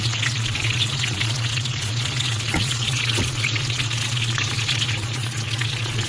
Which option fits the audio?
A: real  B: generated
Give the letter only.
B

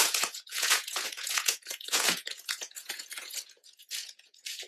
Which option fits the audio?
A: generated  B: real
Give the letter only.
A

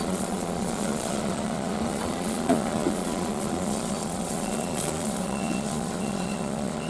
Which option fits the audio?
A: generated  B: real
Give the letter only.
A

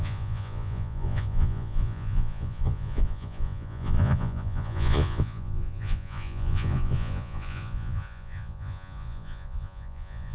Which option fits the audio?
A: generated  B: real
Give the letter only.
A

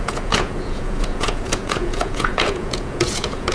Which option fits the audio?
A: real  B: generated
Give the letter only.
B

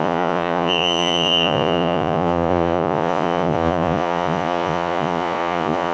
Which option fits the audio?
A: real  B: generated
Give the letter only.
B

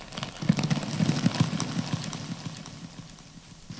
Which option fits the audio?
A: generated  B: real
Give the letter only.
B